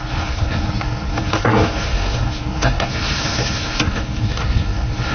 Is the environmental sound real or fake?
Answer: fake